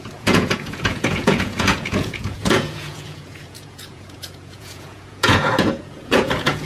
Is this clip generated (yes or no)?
yes